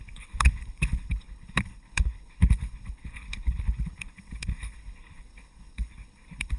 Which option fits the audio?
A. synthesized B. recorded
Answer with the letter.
A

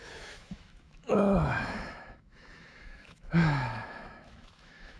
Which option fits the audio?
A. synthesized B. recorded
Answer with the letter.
A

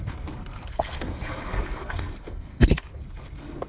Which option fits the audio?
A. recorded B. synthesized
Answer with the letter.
B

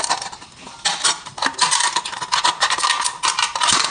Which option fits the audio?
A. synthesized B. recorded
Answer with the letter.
B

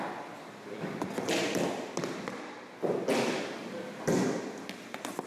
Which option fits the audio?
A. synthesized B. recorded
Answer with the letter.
B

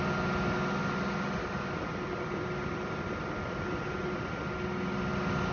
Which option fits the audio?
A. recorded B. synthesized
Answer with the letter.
A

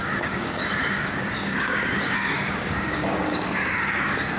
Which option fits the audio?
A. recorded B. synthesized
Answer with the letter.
B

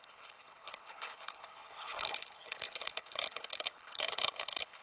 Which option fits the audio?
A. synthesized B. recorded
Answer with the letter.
A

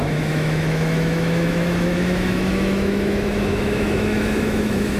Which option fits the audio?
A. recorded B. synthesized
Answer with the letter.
B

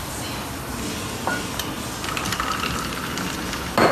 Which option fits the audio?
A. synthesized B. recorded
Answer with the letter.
B